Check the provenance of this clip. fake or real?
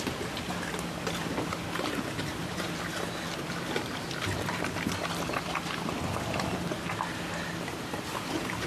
real